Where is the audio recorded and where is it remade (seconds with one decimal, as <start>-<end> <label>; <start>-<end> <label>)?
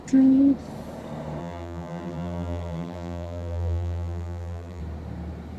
0.0-1.4 recorded; 1.4-4.8 remade; 4.8-5.6 recorded